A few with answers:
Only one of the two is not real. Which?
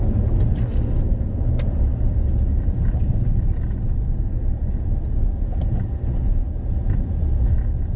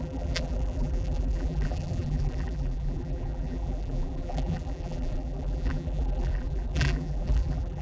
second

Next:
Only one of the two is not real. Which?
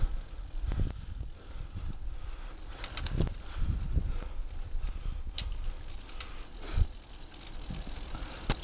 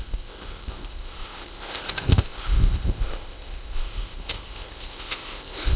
second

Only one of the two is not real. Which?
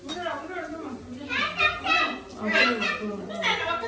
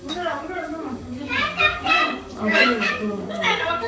second